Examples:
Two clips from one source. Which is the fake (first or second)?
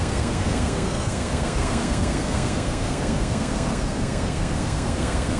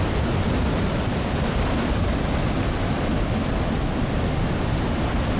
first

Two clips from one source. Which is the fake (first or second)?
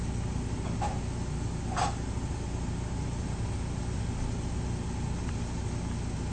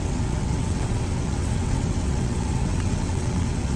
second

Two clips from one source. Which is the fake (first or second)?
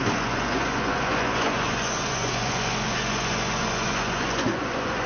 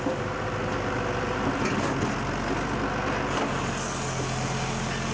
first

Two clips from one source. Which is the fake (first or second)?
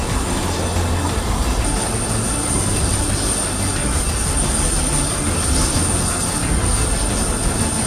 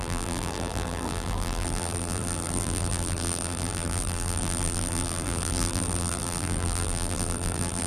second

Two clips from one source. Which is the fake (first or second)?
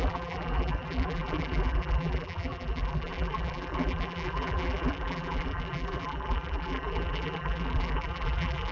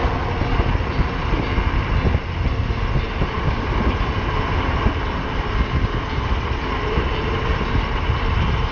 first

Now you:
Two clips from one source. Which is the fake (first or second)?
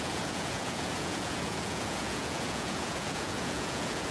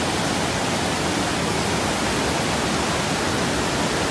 first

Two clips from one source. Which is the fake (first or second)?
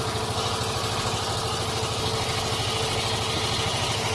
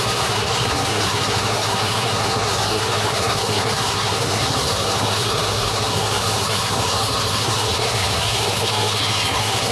second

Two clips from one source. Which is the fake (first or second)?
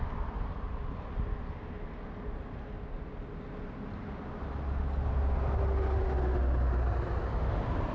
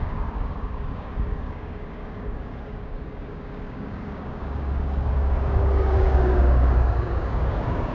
second